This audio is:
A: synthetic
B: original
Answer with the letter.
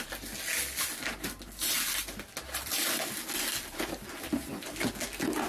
B